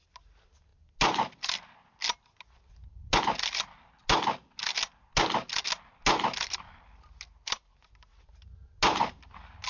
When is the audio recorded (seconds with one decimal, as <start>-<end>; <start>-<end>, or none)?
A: 0.0-9.7